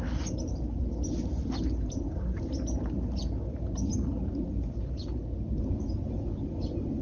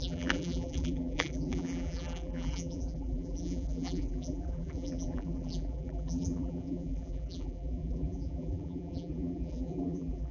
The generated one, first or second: second